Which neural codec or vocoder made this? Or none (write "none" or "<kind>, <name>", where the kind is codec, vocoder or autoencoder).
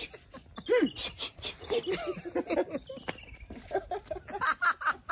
none